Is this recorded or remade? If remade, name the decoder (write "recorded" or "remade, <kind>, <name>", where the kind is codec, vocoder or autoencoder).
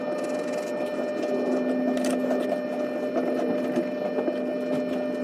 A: recorded